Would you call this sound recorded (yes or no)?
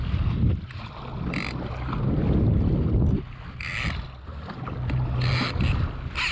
yes